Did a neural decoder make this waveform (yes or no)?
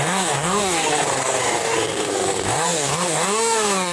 yes